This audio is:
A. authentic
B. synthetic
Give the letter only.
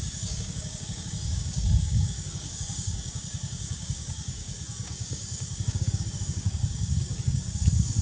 B